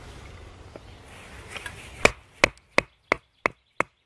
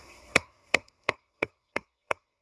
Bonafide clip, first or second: first